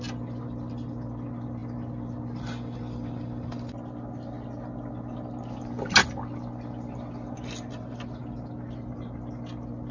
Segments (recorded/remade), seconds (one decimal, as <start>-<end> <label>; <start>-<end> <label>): 0.0-9.9 recorded